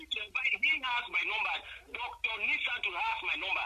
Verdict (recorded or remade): recorded